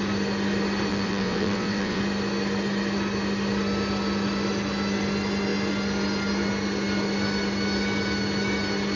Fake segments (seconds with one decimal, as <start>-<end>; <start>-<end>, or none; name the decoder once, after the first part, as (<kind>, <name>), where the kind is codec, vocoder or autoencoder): 0.9-2.0 (vocoder, WaveNeXt)

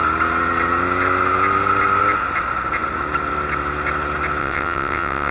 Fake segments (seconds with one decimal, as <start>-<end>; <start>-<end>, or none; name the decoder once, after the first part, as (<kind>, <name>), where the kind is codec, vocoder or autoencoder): 4.4-5.3 (vocoder, WaveNeXt)

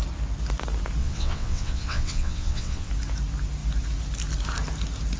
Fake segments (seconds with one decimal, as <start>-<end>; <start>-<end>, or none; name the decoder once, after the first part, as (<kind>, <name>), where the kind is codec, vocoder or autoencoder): 1.0-2.9 (vocoder, WaveNeXt)

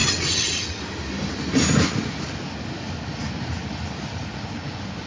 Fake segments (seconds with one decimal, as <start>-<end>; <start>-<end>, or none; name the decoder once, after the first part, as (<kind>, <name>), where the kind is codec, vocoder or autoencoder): 0.0-0.8 (vocoder, WaveNeXt)

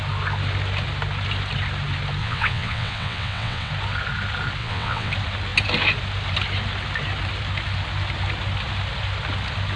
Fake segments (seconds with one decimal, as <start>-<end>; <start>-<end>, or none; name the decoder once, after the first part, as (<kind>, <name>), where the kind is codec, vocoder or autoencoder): 2.2-3.7 (vocoder, WaveNeXt); 4.6-5.1

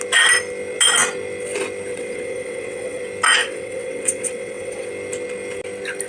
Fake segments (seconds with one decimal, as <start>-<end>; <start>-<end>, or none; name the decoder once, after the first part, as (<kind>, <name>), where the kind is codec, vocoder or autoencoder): 1.9-3.0 (vocoder, WaveNeXt); 3.4-4.9

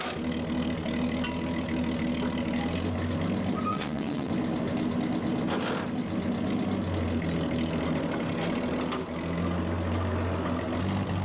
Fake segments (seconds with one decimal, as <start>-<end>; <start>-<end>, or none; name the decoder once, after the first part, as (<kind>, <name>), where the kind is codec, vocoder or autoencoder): 3.7-4.3 (vocoder, WaveNeXt)